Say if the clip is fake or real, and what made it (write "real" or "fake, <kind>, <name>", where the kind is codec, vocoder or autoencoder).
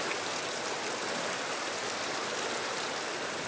real